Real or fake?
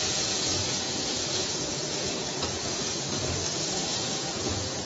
fake